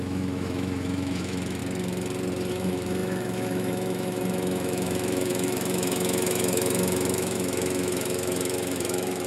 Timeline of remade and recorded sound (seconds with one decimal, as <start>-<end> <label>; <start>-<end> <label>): 0.0-1.6 remade; 1.6-2.5 recorded; 2.5-9.3 remade